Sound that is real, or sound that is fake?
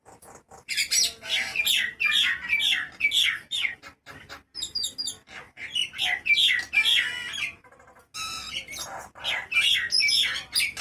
real